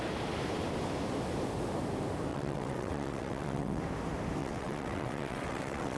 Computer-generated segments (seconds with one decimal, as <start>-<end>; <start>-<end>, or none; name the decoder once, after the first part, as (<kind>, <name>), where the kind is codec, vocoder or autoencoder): 2.3-3.8 (vocoder, WaveNeXt); 4.4-6.0